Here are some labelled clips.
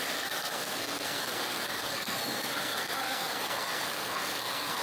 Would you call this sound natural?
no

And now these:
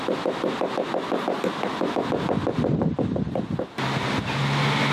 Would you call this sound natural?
yes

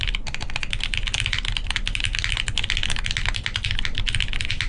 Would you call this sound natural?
yes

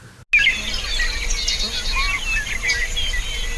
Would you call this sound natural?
yes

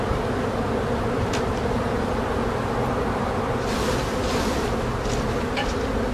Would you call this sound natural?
yes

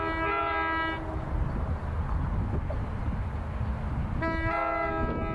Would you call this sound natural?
yes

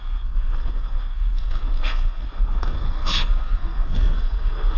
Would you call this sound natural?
no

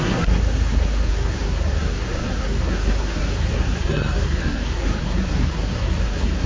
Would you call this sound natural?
no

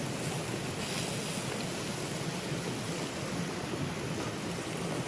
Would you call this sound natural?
yes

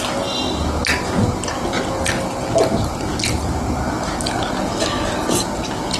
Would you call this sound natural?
yes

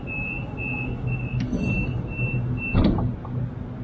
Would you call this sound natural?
yes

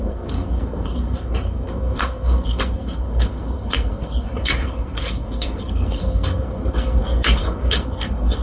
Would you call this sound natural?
no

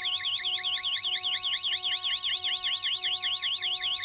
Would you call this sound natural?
yes